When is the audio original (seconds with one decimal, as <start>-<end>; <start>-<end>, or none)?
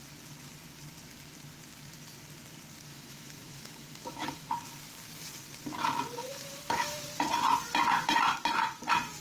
0.0-2.9; 4.5-6.2; 7.0-9.2